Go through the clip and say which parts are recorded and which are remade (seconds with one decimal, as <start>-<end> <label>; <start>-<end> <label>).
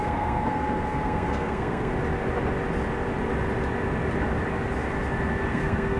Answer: 0.0-1.9 remade; 1.9-5.5 recorded; 5.5-6.0 remade